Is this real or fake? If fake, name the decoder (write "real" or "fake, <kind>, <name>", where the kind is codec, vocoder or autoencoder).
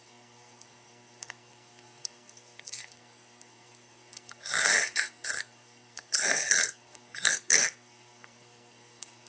fake, codec, SNAC